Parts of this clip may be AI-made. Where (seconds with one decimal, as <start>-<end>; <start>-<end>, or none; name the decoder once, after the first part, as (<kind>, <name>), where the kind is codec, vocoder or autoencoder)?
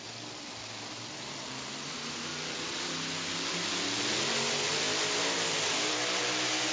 none